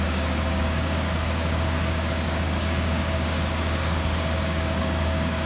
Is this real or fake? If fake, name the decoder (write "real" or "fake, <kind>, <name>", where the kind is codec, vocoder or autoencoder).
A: fake, codec, DAC